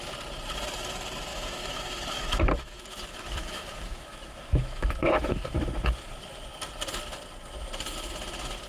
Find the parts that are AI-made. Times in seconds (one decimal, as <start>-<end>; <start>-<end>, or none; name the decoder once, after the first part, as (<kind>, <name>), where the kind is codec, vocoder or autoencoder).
1.3-6.1 (autoencoder, DAC-VAE)